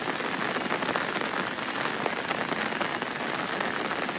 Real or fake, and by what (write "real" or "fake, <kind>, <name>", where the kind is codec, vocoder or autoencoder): real